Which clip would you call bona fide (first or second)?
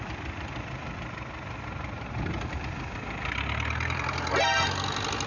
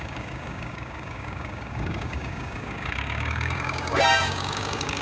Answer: first